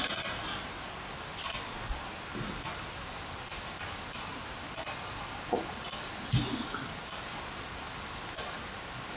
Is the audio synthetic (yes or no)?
no